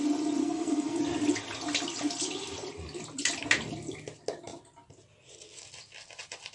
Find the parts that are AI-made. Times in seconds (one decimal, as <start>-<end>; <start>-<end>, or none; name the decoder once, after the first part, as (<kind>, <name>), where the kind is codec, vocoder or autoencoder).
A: 0.4-1.0 (codec, SNAC)